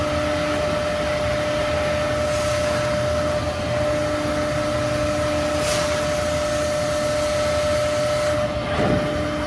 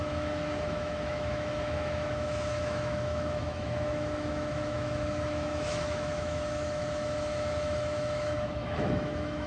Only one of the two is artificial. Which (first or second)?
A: second